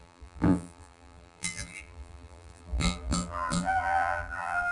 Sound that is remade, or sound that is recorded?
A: remade